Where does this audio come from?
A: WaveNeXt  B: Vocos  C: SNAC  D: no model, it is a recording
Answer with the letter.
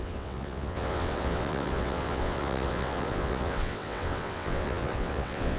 A